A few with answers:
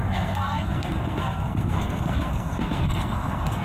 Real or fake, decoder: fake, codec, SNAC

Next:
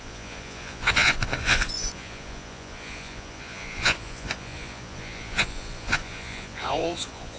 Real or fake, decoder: fake, vocoder, Vocos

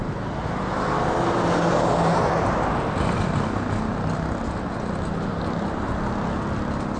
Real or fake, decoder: real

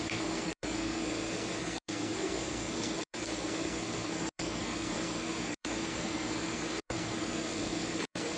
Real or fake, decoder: fake, codec, SNAC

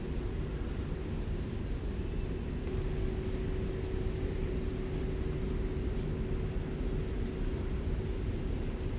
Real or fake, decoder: real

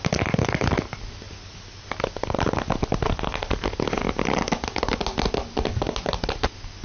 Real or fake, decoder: real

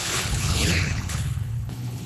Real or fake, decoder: fake, codec, HILCodec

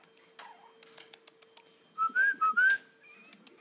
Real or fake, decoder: real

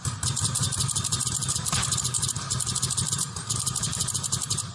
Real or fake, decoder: fake, vocoder, BigVGAN v2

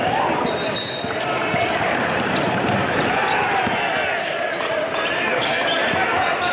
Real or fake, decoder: real